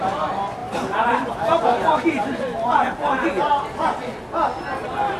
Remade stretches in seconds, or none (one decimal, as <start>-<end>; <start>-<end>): 0.6-3.3